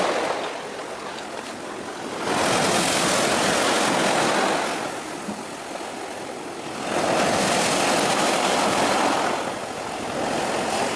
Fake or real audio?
real